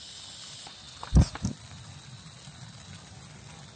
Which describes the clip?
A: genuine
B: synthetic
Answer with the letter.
A